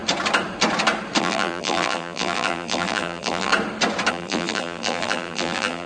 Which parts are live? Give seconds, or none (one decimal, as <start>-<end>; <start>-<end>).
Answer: 0.0-1.2; 3.5-4.1